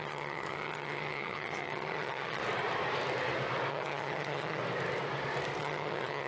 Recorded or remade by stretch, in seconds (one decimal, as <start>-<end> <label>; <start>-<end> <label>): 0.0-2.4 remade; 2.4-3.7 recorded; 3.7-4.6 remade; 4.6-5.6 recorded; 5.6-6.3 remade